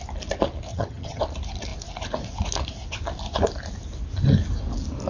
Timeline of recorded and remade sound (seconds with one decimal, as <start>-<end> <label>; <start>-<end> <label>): 0.0-0.7 recorded; 0.7-1.2 remade; 1.2-5.1 recorded